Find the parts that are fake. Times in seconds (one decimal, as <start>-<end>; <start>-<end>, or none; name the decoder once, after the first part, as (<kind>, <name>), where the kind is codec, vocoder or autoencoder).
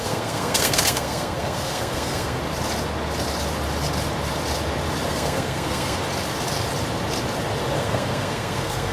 0.0-2.4 (codec, SNAC); 5.1-6.0; 7.8-8.9